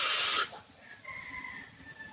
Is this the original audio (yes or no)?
yes